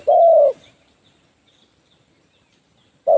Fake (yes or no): no